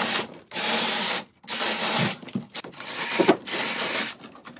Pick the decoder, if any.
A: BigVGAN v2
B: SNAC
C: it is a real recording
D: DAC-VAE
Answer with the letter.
C